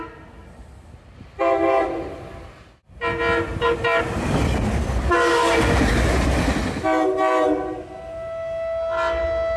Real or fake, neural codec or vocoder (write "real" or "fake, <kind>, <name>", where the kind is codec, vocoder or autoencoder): real